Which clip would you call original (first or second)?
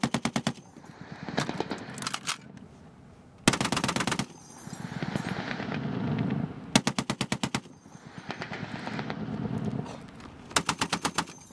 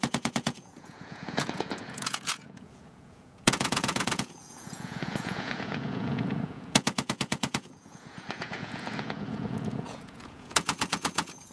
first